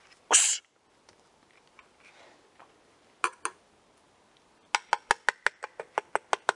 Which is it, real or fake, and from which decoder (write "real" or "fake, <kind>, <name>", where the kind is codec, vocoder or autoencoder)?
real